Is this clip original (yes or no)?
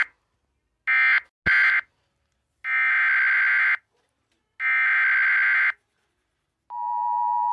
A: yes